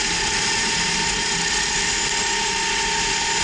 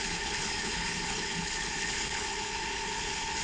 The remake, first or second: second